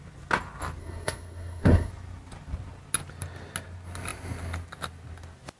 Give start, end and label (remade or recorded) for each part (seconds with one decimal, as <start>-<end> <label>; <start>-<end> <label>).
0.0-0.8 recorded; 0.8-1.9 remade; 1.9-5.6 recorded